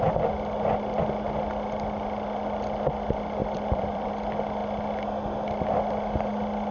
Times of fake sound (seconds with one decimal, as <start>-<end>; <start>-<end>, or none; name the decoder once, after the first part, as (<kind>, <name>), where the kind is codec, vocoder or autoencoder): 3.4-4.1 (vocoder, BigVGAN v2)